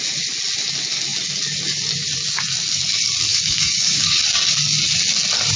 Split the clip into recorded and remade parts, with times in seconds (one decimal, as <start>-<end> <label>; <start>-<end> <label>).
0.0-3.3 recorded; 3.3-4.2 remade; 4.2-5.6 recorded